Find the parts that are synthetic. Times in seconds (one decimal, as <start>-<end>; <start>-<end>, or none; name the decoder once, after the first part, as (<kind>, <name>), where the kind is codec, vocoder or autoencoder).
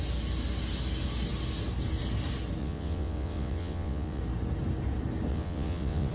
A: 2.6-4.2 (vocoder, WaveNeXt); 5.3-6.1